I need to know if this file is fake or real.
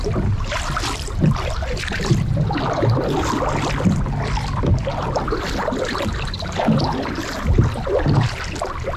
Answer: real